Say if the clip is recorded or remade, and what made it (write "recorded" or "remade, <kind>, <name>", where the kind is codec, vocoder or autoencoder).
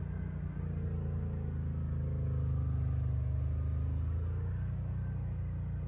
recorded